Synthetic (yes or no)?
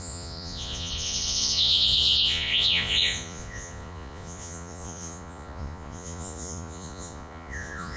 yes